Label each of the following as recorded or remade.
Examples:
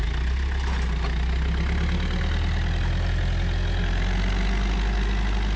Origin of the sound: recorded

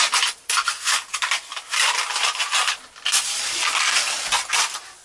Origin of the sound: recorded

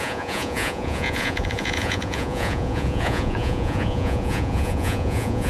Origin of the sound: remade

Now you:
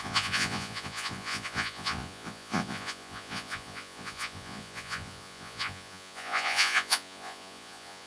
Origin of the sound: remade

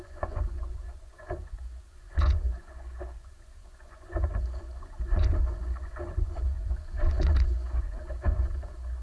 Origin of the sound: remade